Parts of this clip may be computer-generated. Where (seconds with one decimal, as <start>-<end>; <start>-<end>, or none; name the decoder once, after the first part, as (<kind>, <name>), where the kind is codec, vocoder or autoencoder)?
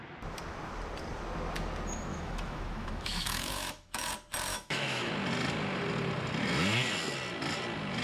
2.1-4.1 (autoencoder, DAC-VAE); 4.5-5.1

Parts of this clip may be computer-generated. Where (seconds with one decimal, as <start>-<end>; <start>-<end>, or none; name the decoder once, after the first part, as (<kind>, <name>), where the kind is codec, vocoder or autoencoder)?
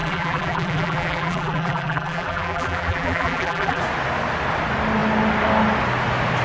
0.0-3.8 (vocoder, BigVGAN v2)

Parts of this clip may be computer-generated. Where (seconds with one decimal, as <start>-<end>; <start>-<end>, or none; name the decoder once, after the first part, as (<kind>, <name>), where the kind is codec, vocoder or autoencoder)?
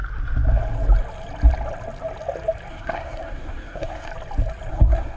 2.7-4.1 (codec, SNAC); 4.7-5.2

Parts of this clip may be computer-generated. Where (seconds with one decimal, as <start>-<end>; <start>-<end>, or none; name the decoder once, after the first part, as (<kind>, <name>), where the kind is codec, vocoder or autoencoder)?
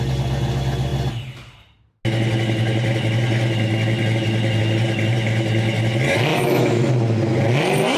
6.3-6.9 (autoencoder, DAC-VAE)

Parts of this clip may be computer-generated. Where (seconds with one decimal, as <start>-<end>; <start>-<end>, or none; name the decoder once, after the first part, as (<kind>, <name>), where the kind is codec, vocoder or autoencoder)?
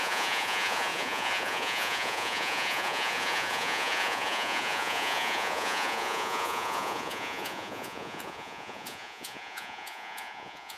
0.0-10.8 (vocoder, Vocos)